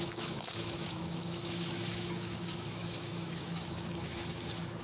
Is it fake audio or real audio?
fake